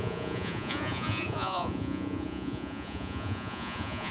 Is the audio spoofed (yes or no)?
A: yes